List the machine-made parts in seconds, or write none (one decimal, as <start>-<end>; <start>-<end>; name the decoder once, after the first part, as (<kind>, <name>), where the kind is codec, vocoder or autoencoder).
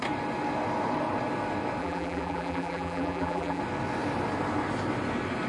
1.8-3.6 (vocoder, BigVGAN v2)